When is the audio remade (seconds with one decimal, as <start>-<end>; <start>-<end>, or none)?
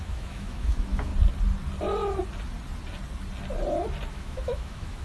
0.0-1.1; 4.1-5.0